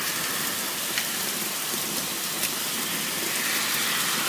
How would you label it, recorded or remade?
recorded